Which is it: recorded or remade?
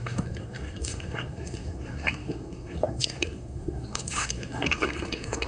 remade